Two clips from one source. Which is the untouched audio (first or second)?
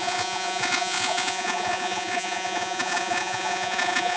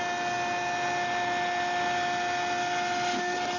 second